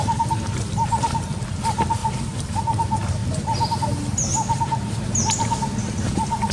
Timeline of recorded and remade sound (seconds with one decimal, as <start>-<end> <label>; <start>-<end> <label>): 0.0-6.5 recorded